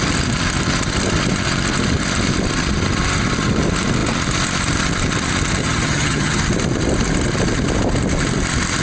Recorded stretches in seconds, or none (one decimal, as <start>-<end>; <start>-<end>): 0.0-5.6; 6.4-8.8